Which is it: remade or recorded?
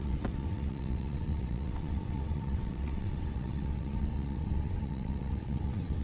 remade